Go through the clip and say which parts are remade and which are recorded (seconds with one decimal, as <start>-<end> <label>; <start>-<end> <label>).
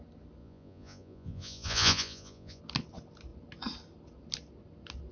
0.0-0.4 recorded; 0.4-2.6 remade; 2.6-5.1 recorded